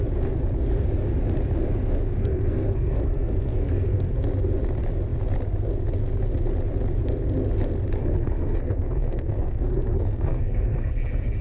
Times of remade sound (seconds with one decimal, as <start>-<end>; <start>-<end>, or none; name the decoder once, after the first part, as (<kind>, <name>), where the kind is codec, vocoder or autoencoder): 2.2-4.2 (codec, SNAC); 8.0-10.9